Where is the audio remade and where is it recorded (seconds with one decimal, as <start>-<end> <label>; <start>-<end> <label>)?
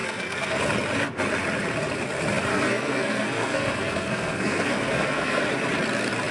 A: 0.0-0.6 remade; 0.6-2.5 recorded; 2.5-5.4 remade; 5.4-6.3 recorded